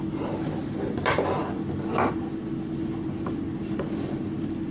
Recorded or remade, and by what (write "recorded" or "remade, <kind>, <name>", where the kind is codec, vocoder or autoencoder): recorded